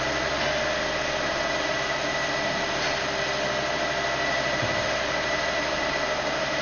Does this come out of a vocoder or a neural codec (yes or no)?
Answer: no